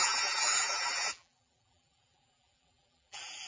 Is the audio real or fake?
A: fake